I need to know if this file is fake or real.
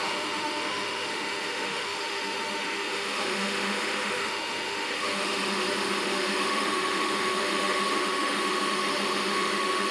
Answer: fake